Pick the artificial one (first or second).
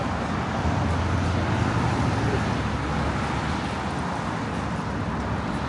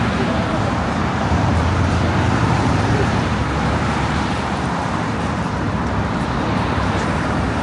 second